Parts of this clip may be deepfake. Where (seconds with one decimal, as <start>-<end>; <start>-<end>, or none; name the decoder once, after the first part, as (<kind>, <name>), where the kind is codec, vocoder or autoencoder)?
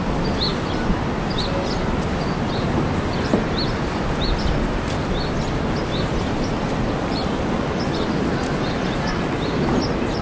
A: none